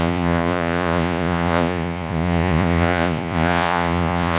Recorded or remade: remade